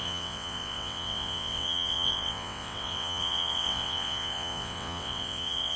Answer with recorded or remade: remade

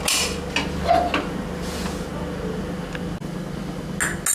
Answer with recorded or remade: recorded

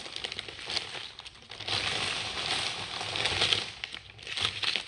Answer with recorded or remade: recorded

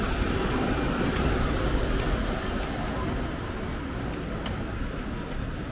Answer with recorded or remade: recorded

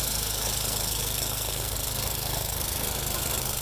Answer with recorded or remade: remade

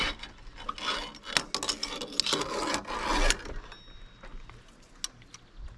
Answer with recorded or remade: recorded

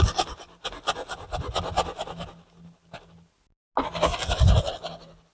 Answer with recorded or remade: recorded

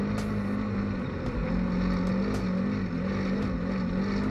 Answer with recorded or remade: recorded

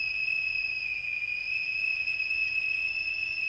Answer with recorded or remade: remade